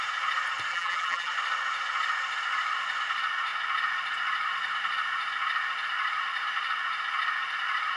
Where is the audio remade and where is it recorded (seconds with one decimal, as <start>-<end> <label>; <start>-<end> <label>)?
0.0-0.7 recorded; 0.7-1.3 remade; 1.3-8.0 recorded